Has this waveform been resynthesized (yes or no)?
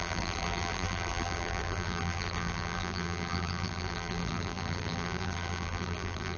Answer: yes